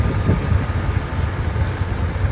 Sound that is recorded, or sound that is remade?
recorded